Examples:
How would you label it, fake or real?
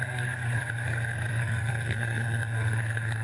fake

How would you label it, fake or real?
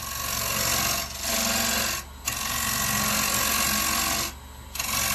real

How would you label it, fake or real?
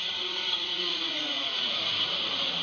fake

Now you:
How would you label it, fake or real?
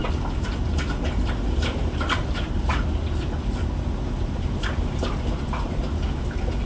real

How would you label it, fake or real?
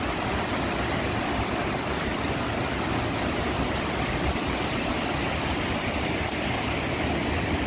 real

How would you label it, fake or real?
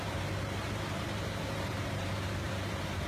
fake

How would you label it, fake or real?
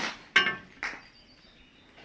real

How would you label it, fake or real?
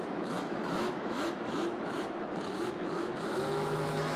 fake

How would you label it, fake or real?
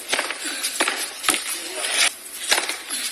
real